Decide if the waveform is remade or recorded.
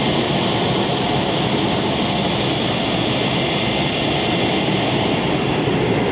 recorded